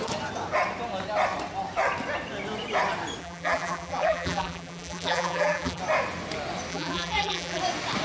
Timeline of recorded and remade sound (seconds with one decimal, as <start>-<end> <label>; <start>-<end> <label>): 0.0-3.2 recorded; 3.2-5.8 remade; 5.8-6.7 recorded; 6.7-7.6 remade; 7.6-8.0 recorded

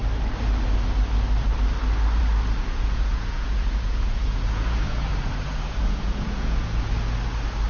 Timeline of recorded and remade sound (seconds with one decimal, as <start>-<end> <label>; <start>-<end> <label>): 0.0-2.6 recorded; 2.6-6.9 remade; 6.9-7.7 recorded

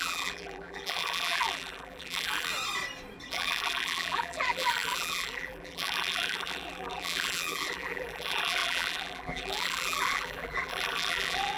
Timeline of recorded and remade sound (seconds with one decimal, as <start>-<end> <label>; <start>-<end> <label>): 0.0-2.5 remade; 2.5-3.3 recorded; 3.3-11.6 remade